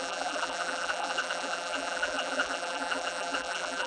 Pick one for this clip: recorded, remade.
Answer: remade